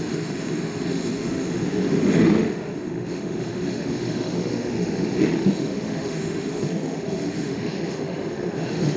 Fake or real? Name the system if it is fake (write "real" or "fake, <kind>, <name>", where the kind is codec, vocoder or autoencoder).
fake, autoencoder, DAC-VAE